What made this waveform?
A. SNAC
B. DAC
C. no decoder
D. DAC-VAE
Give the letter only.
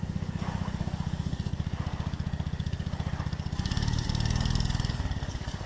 B